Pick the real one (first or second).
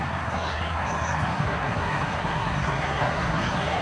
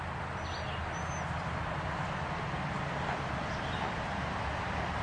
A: second